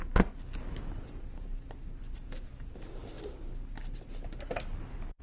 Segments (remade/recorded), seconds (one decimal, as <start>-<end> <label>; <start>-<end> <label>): 0.0-5.2 recorded